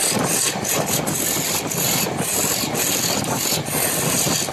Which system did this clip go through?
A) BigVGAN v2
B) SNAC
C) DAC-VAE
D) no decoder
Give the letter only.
D